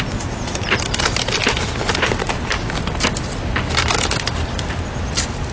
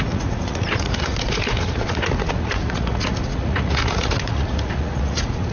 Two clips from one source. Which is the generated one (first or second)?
second